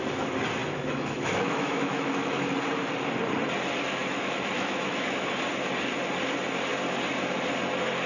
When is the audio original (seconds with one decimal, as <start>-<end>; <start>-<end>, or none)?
0.0-0.6; 2.5-4.0; 5.3-8.1